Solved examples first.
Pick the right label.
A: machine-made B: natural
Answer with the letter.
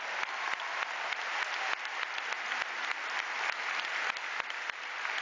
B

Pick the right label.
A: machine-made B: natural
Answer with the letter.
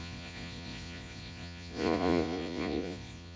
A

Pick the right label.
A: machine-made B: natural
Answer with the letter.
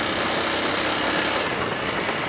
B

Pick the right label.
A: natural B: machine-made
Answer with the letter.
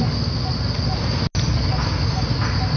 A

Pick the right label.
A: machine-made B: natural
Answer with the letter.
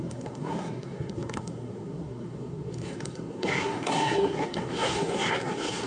A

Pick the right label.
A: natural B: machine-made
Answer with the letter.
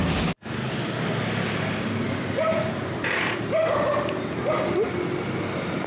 A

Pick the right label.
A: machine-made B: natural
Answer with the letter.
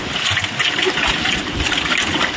B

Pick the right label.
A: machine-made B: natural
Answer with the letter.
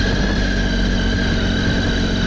B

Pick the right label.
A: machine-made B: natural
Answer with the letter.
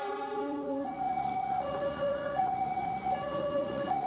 A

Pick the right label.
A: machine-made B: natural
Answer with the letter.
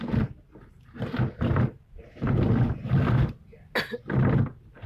B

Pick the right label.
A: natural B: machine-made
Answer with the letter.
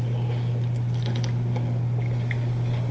A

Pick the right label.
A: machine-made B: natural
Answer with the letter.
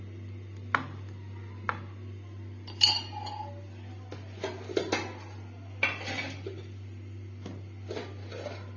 B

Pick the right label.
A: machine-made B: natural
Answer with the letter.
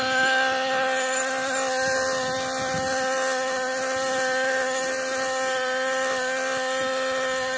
B